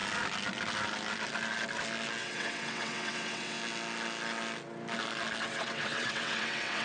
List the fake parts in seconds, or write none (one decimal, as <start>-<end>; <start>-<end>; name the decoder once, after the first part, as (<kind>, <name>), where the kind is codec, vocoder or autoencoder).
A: 2.2-3.6 (vocoder, WaveNeXt); 5.4-6.8